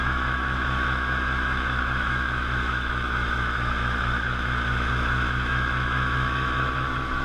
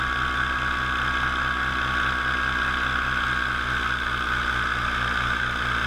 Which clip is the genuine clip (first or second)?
second